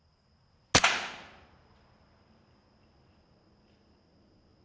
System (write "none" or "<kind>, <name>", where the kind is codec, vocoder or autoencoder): none